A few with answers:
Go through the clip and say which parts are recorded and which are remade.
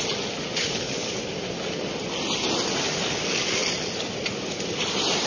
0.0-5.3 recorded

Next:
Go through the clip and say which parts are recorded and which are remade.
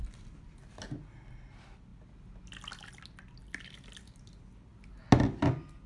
0.0-5.9 recorded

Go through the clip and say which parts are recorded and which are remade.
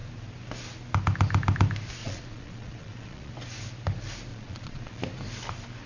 0.0-2.0 recorded; 2.0-3.3 remade; 3.3-4.3 recorded; 4.3-5.0 remade; 5.0-5.9 recorded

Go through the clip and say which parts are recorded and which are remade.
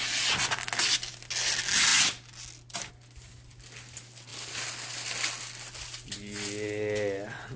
0.0-7.6 recorded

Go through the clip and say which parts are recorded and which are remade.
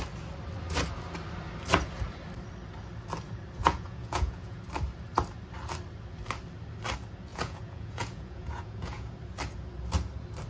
0.0-3.6 recorded; 3.6-4.6 remade; 4.6-7.3 recorded; 7.3-9.1 remade; 9.1-10.5 recorded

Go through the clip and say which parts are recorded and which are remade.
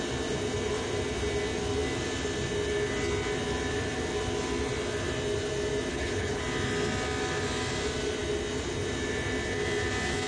0.0-5.9 recorded; 5.9-6.4 remade; 6.4-10.3 recorded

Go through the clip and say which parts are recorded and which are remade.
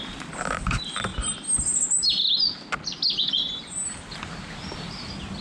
0.0-5.4 recorded